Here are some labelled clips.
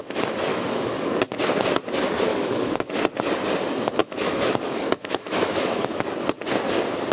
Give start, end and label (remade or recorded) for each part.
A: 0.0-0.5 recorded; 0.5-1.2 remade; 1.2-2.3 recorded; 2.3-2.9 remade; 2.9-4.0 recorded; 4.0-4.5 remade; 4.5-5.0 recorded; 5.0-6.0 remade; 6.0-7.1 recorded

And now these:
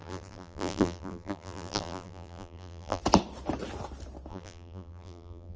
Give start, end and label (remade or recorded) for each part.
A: 0.0-3.0 remade; 3.0-4.3 recorded; 4.3-5.6 remade